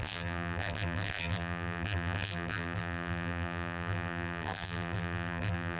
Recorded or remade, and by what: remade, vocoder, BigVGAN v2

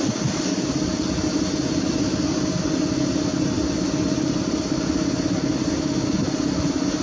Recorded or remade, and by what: recorded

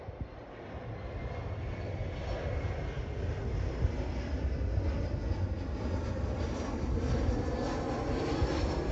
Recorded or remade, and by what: recorded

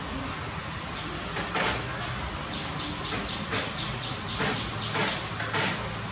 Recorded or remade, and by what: recorded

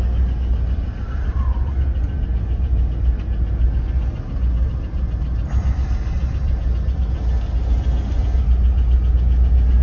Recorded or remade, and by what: recorded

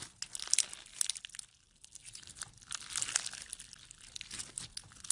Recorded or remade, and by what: recorded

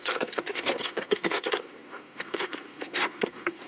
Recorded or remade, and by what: remade, codec, SNAC